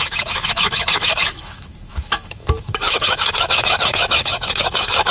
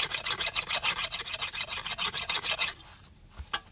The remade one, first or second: first